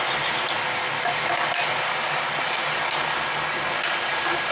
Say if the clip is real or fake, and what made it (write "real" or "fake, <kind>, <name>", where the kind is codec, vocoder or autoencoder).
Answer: real